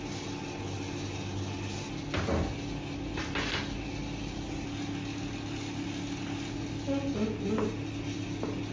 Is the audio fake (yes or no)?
no